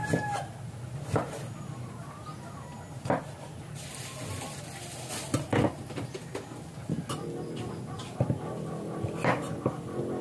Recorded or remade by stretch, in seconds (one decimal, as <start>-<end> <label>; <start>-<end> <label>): 0.0-10.2 recorded